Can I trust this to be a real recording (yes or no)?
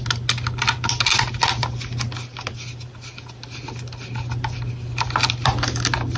yes